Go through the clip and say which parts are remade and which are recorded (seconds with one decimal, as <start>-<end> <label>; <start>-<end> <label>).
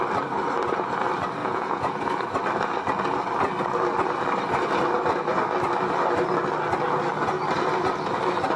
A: 0.0-1.4 recorded; 1.4-2.0 remade; 2.0-8.6 recorded